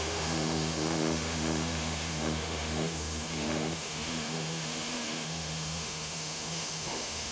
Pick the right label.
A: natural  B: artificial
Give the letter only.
B